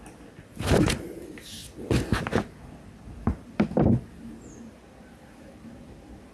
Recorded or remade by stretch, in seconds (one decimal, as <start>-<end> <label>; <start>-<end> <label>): 0.0-6.3 remade